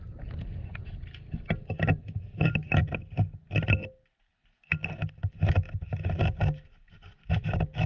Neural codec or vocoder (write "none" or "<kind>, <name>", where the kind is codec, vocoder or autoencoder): none